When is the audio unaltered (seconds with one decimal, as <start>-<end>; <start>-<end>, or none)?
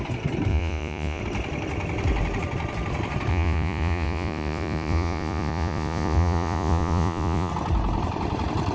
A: 0.0-0.5; 1.2-3.3; 7.5-8.7